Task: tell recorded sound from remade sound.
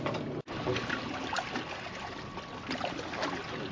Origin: recorded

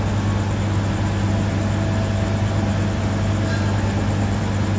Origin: recorded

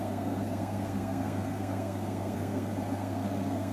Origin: remade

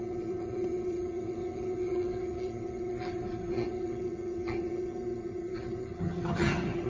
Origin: remade